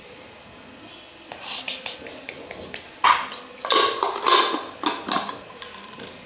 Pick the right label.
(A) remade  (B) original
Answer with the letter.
B